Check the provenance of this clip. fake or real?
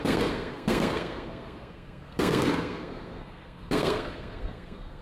fake